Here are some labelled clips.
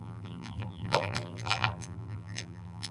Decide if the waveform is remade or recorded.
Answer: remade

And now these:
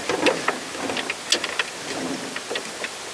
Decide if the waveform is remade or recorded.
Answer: recorded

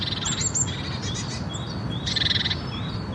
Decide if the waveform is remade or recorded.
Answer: recorded